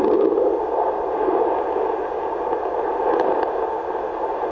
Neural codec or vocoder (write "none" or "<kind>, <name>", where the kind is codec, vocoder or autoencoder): none